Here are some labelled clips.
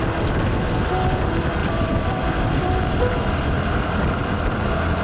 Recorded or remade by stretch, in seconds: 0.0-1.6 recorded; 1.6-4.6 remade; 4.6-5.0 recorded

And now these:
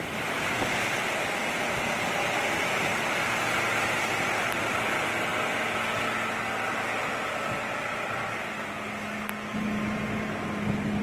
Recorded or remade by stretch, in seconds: 0.0-11.0 recorded

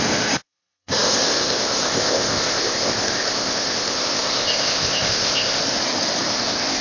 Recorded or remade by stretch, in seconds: 0.0-5.6 remade; 5.6-6.3 recorded; 6.3-6.8 remade

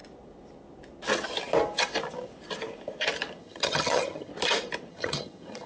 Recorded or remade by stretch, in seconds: 0.0-3.4 recorded; 3.4-4.3 remade; 4.3-4.9 recorded; 4.9-5.7 remade

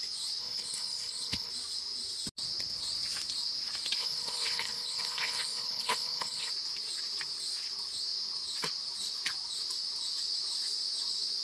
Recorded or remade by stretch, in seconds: 0.0-0.4 recorded; 0.4-1.5 remade; 1.5-4.0 recorded; 4.0-6.5 remade; 6.5-11.4 recorded

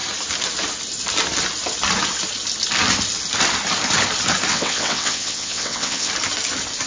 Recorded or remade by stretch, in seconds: 0.0-4.5 recorded; 4.5-6.1 remade; 6.1-6.9 recorded

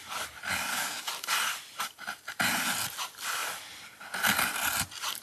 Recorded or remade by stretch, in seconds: 0.0-0.7 recorded; 0.7-1.3 remade; 1.3-5.2 recorded

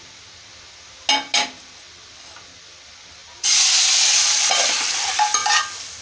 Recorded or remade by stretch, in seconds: 0.0-6.0 recorded